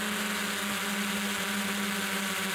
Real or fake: real